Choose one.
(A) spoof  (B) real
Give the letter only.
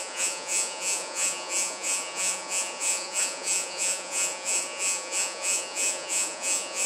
A